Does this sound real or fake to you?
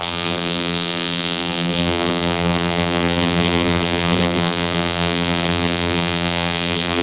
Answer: fake